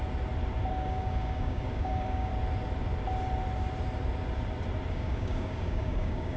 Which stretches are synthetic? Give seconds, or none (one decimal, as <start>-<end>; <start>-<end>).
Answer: 0.7-2.3; 4.9-6.4